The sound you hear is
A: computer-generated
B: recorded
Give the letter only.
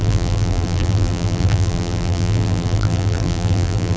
A